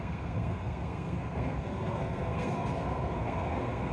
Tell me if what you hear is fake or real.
fake